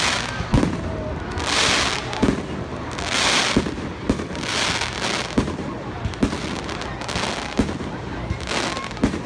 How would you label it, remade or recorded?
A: recorded